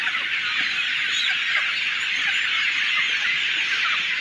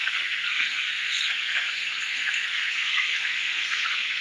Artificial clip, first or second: second